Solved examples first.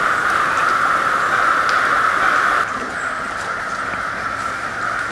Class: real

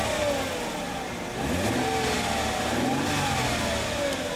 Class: real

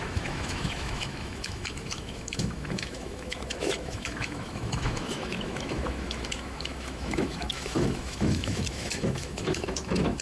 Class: fake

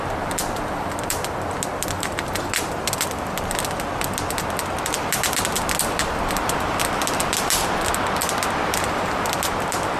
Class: real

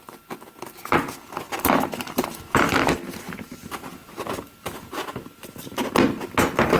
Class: real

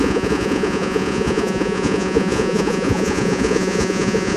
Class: fake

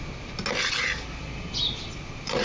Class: real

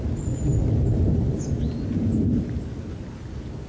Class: real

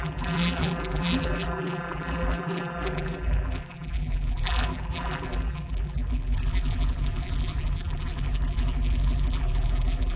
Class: fake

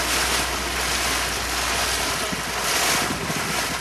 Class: real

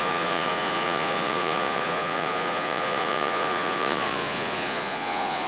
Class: fake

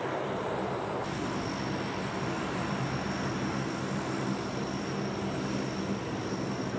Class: real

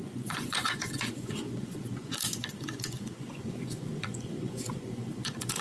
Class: fake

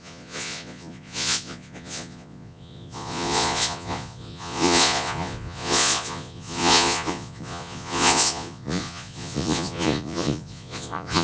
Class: fake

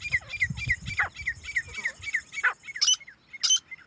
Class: real